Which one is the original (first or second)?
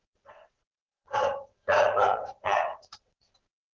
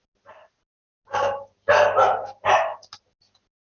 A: second